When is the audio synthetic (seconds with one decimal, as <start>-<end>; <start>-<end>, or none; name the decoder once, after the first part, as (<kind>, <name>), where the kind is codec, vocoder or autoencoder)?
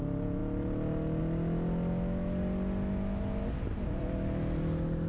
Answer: none